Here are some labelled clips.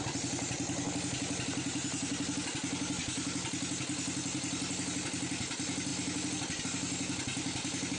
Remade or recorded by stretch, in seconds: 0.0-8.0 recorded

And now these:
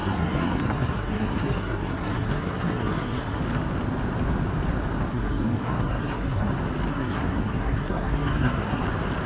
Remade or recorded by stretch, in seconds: 0.0-3.4 remade; 3.4-5.1 recorded; 5.1-6.5 remade; 6.5-6.9 recorded; 6.9-8.8 remade; 8.8-9.3 recorded

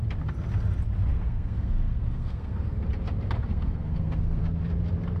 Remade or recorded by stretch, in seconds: 0.0-1.1 recorded; 1.1-2.8 remade; 2.8-3.5 recorded; 3.5-4.6 remade; 4.6-5.2 recorded

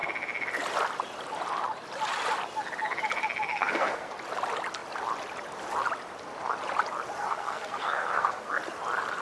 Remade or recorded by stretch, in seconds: 0.0-3.5 recorded; 3.5-4.1 remade; 4.1-7.2 recorded; 7.2-8.6 remade; 8.6-9.2 recorded

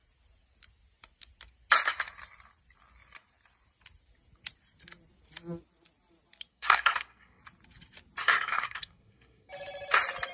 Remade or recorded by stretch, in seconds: 0.0-6.5 recorded; 6.5-7.4 remade; 7.4-8.2 recorded; 8.2-9.5 remade; 9.5-10.3 recorded

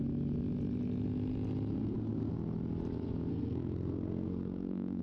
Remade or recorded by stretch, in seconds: 0.0-1.8 recorded; 1.8-2.3 remade; 2.3-3.3 recorded; 3.3-5.0 remade

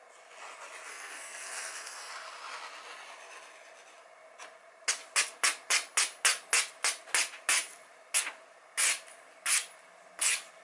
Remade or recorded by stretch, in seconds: 0.0-0.9 recorded; 0.9-2.1 remade; 2.1-10.6 recorded